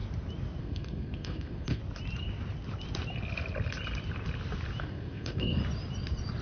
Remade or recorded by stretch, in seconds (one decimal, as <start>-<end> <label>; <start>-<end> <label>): 0.0-0.6 recorded; 0.6-1.8 remade; 1.8-4.8 recorded; 4.8-5.6 remade; 5.6-6.4 recorded